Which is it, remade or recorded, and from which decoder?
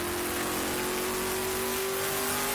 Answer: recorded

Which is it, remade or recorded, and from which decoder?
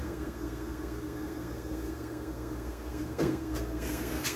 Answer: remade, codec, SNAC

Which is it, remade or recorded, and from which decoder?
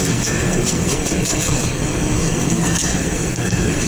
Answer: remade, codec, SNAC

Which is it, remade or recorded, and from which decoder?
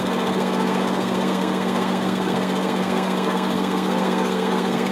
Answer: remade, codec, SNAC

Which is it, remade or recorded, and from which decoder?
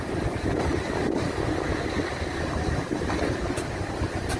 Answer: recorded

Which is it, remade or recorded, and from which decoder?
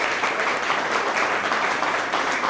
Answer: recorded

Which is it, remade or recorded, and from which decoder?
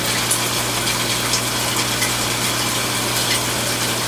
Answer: recorded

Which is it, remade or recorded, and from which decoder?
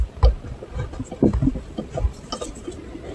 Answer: recorded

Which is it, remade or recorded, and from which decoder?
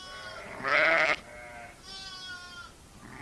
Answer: recorded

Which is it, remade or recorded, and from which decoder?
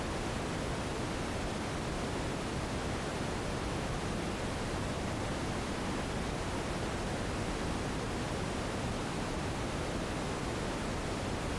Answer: recorded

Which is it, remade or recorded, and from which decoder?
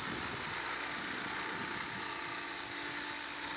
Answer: recorded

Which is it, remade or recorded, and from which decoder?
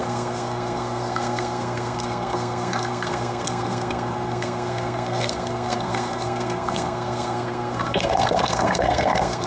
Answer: remade, codec, SNAC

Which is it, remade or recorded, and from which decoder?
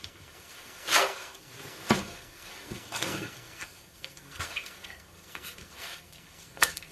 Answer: remade, codec, SNAC